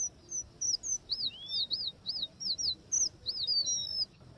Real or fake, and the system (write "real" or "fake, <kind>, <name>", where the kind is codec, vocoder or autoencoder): real